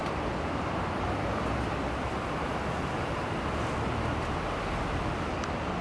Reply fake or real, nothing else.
fake